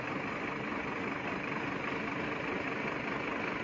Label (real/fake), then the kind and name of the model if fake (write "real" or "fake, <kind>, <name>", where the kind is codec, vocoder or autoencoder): real